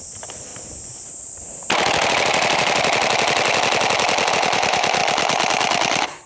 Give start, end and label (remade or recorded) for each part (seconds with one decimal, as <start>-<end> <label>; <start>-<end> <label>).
0.0-0.5 remade; 0.5-4.3 recorded; 4.3-5.0 remade; 5.0-6.3 recorded